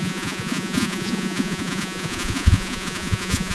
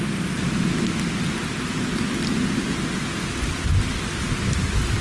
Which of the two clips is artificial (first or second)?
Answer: first